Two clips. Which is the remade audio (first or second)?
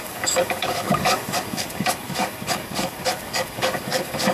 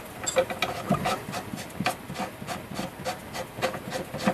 first